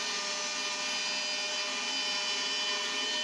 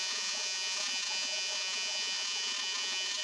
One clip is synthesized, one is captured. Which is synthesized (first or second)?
second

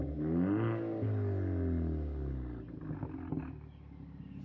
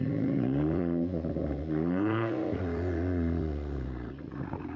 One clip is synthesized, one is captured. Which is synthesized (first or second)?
second